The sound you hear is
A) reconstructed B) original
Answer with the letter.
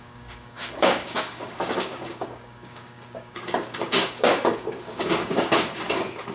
A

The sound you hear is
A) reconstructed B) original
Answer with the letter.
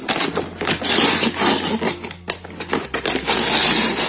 B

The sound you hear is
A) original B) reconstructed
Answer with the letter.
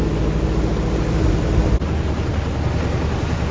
A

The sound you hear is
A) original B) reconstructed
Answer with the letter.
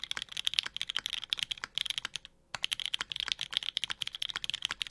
A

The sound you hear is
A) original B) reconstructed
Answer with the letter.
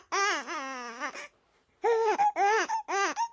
A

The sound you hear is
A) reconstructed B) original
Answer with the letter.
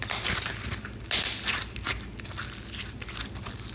B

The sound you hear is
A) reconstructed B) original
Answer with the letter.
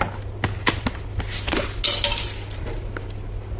B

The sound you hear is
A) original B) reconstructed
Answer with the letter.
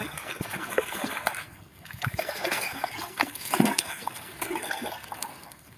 B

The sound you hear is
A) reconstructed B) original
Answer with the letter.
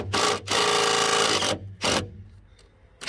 B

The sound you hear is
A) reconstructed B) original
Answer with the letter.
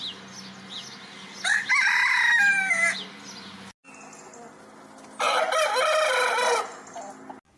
B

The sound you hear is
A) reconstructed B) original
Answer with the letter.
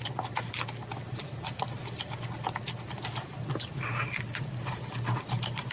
B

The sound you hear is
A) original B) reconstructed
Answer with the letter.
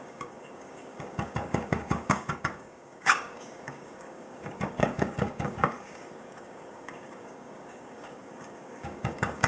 B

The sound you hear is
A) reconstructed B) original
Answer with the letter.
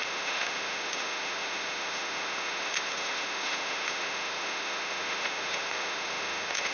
A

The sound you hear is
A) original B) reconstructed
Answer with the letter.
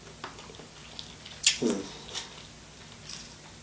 A